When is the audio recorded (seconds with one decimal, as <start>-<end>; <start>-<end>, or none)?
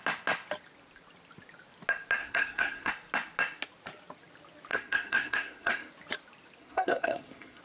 0.0-2.2; 2.9-4.7; 5.9-6.6